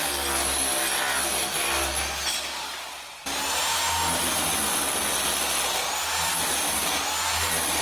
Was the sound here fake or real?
real